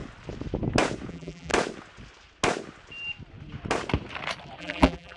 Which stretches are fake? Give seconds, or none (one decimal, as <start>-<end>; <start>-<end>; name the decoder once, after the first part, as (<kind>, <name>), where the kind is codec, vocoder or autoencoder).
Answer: 1.1-1.5 (vocoder, BigVGAN v2); 4.6-5.2